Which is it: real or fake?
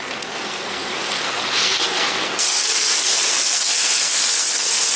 fake